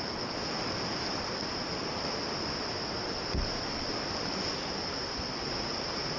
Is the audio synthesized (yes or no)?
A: no